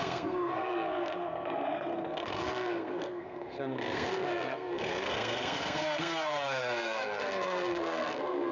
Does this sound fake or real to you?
fake